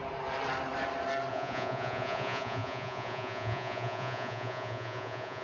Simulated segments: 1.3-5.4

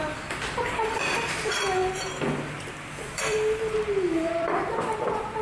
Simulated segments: 0.0-5.4

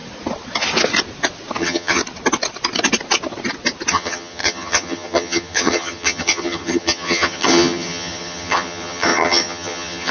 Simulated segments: 1.6-2.0; 3.9-10.1

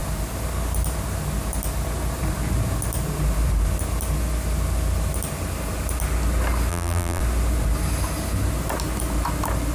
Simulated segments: 6.7-7.2

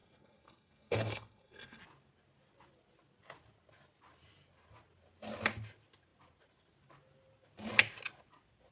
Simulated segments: 0.0-1.8